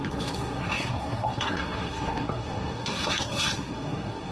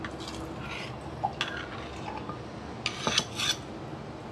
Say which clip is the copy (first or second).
first